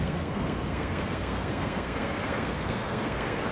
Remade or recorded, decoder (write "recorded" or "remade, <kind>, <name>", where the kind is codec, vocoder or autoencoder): remade, codec, SNAC